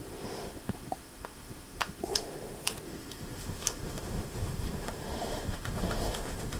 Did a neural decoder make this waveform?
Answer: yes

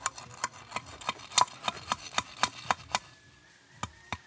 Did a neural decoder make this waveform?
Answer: no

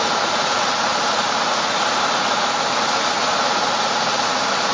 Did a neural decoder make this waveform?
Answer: yes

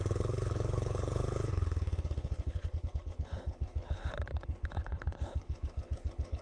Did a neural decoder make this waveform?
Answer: yes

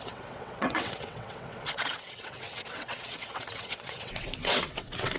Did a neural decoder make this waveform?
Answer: yes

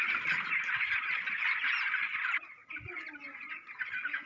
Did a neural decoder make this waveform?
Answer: no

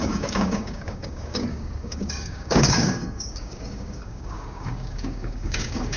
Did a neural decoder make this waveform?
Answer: yes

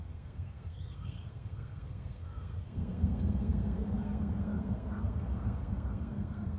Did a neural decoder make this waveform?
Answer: yes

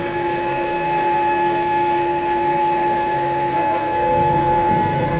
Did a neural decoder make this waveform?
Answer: yes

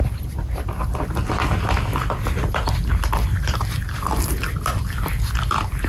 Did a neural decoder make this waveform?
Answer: no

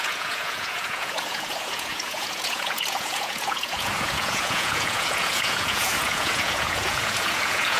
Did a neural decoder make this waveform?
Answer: yes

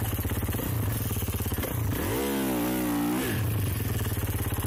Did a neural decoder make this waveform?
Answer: no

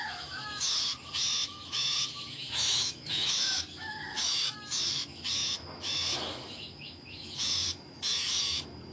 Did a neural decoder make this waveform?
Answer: yes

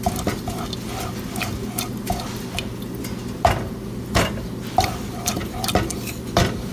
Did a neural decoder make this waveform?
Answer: no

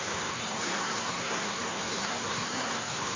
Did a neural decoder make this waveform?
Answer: yes